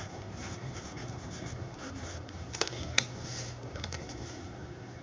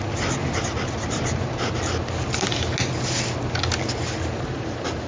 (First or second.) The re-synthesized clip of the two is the first